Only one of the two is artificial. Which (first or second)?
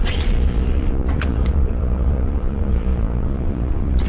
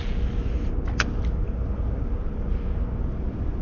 first